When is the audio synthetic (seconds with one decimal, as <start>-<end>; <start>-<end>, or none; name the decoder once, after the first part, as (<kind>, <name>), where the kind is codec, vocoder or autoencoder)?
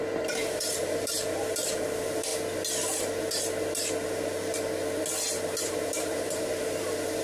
0.0-2.3 (vocoder, BigVGAN v2); 5.6-7.2